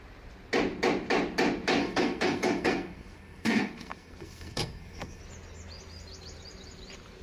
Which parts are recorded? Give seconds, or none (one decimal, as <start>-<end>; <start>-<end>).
0.0-1.8; 5.2-7.2